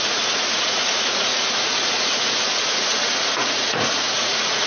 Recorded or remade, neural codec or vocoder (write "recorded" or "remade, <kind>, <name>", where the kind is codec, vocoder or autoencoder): remade, vocoder, Vocos